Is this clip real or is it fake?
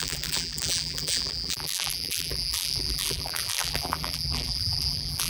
fake